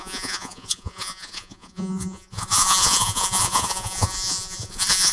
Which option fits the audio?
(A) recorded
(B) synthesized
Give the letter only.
B